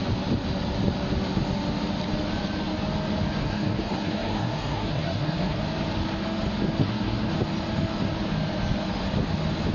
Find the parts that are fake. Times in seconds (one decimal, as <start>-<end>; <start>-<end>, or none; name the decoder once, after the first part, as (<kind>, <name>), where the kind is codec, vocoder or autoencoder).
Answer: 3.4-5.6 (codec, SNAC); 6.8-7.3